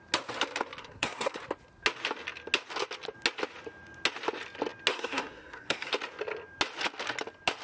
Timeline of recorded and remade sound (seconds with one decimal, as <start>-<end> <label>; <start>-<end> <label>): 0.0-0.8 recorded; 0.8-1.4 remade; 1.4-4.9 recorded; 4.9-5.9 remade; 5.9-7.6 recorded